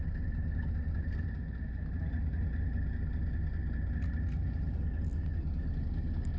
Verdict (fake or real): real